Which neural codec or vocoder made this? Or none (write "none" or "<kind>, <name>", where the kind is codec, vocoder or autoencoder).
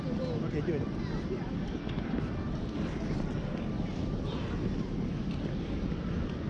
none